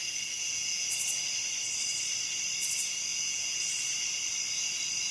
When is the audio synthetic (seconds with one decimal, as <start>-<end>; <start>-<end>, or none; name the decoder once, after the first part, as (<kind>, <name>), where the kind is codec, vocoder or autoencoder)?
0.0-0.9 (vocoder, Vocos); 3.1-3.6